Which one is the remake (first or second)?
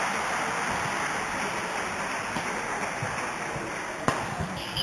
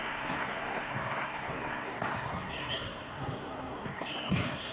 second